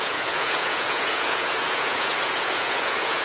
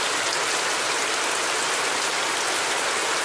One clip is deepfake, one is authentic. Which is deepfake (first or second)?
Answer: first